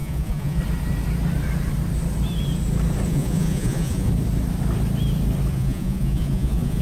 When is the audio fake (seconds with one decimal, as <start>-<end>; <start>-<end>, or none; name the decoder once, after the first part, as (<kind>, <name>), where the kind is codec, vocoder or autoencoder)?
0.0-0.6 (vocoder, Vocos); 3.1-4.1; 5.5-6.8